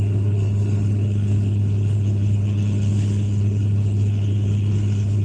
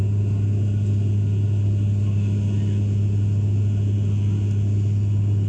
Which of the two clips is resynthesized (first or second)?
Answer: first